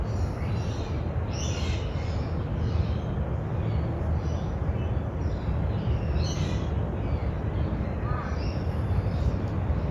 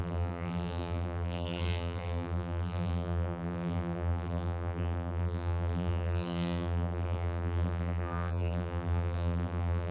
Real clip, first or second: first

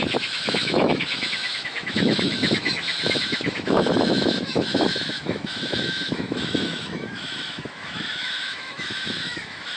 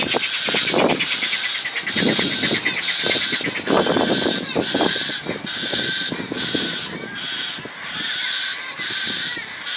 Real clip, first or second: second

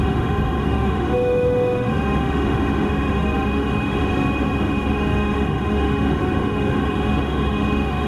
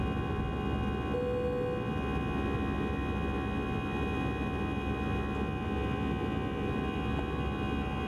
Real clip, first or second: second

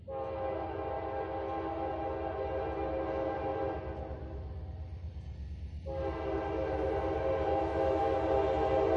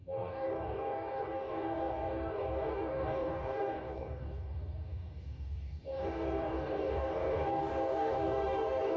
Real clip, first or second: first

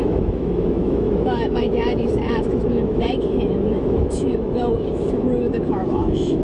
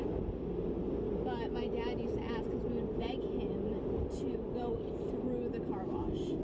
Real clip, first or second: second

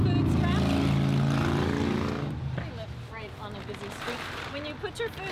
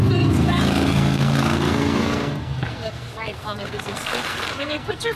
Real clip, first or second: first